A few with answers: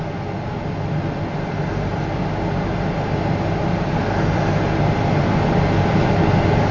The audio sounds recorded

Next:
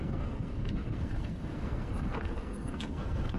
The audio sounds remade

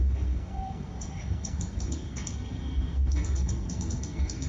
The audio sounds remade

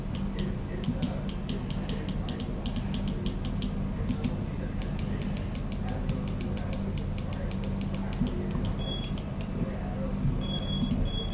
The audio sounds recorded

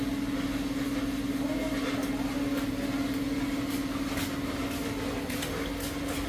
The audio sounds recorded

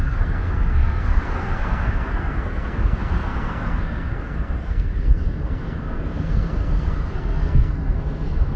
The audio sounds remade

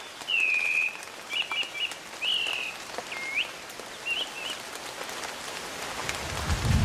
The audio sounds recorded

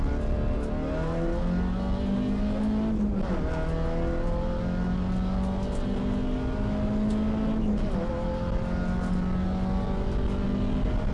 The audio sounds recorded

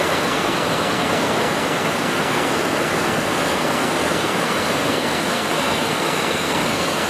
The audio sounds remade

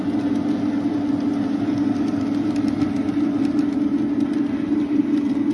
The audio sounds recorded